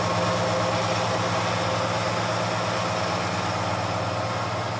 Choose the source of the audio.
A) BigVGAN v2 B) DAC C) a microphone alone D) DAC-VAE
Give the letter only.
C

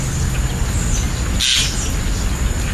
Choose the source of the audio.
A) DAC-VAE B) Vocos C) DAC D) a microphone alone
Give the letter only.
D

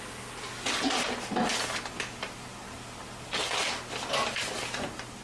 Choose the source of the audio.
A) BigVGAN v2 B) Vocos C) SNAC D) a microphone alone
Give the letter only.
D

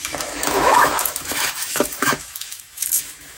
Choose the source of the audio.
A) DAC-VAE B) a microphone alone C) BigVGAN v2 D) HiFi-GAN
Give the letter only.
A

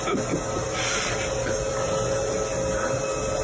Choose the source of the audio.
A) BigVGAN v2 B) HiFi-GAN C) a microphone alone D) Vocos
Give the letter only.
C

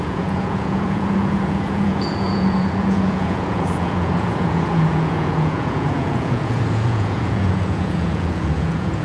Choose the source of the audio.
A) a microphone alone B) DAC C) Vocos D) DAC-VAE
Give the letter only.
C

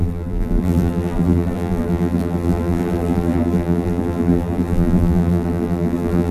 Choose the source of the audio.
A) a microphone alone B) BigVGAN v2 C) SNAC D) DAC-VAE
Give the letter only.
B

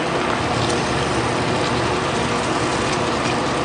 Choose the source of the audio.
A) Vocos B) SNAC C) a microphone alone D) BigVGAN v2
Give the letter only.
C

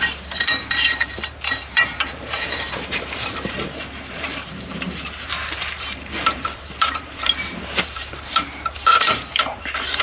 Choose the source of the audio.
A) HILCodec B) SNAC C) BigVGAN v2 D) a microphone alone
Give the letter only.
C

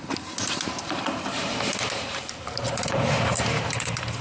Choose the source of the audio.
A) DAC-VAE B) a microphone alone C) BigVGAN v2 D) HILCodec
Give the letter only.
C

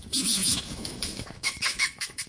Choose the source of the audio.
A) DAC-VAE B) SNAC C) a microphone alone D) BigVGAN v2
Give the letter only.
A